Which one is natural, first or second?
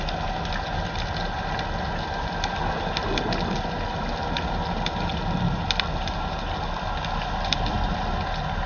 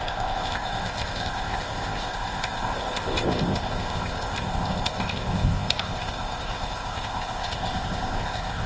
first